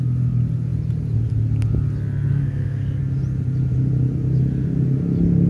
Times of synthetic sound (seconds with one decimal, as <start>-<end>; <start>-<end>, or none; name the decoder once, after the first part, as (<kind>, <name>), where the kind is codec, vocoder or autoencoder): 2.3-3.0 (codec, SNAC)